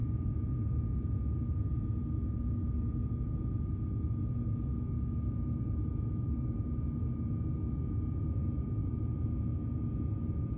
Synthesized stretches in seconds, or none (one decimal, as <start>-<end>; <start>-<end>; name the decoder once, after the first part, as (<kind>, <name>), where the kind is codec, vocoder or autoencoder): 0.0-0.5 (vocoder, Vocos); 8.8-9.6